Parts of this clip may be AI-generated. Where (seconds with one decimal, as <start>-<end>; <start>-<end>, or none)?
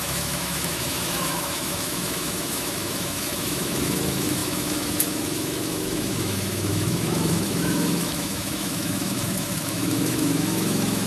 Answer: 0.0-11.1